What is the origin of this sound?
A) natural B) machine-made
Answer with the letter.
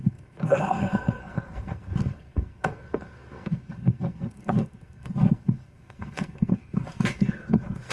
B